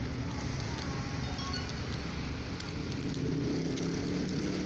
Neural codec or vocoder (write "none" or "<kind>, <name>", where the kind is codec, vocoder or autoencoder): none